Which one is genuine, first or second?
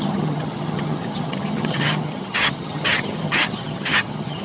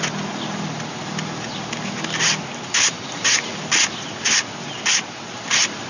second